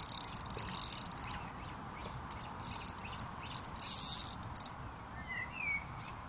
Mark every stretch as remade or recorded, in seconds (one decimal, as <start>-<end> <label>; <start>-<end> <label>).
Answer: 0.0-6.3 recorded